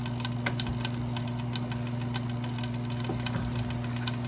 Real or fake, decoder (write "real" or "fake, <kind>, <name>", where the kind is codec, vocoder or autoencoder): real